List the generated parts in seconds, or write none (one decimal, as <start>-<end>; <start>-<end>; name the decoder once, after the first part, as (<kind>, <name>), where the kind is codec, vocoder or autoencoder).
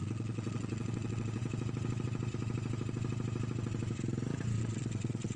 0.0-1.4 (vocoder, Vocos); 4.6-5.4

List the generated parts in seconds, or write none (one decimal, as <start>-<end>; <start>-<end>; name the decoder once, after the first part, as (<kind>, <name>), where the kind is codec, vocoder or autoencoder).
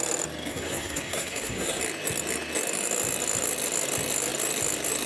0.5-1.8 (codec, SNAC)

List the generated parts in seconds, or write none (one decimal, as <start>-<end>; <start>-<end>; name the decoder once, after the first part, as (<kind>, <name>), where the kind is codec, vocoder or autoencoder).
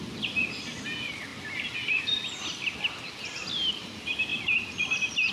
none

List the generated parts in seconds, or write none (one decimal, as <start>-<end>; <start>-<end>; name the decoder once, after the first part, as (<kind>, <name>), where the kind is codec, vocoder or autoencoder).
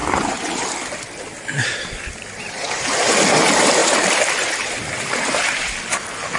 0.0-2.5 (vocoder, BigVGAN v2); 3.8-5.9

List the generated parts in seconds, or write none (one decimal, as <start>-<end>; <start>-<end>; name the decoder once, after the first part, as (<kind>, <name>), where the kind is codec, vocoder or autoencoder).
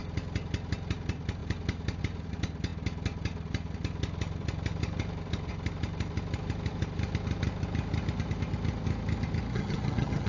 9.5-10.3 (vocoder, HiFi-GAN)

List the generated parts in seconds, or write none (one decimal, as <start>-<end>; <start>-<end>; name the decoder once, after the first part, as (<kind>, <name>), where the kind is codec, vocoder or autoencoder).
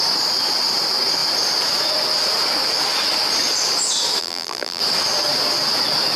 4.2-4.8 (vocoder, BigVGAN v2)